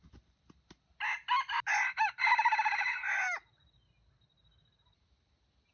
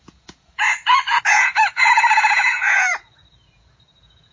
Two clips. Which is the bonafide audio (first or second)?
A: first